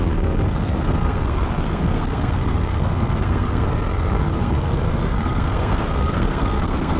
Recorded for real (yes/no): no